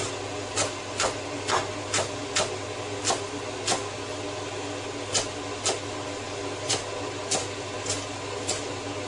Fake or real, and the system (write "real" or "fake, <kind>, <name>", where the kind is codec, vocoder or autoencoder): real